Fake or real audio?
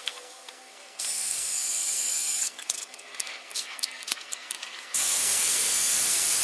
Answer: fake